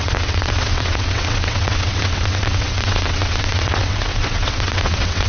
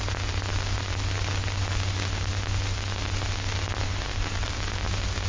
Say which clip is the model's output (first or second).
first